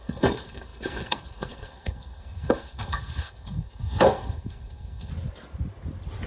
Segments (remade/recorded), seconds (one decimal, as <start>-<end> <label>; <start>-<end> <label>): 0.0-5.1 remade; 5.1-6.3 recorded